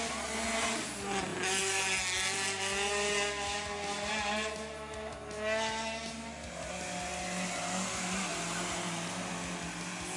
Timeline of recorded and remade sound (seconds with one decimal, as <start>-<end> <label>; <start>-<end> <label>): 0.0-10.2 recorded